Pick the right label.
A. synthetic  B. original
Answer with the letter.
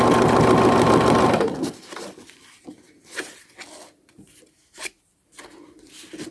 B